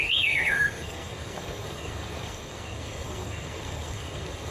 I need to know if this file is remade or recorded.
remade